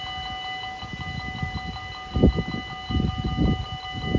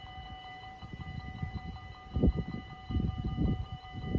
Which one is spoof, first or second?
second